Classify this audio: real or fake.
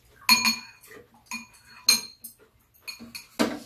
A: real